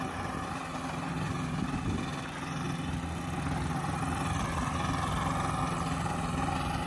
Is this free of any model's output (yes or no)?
yes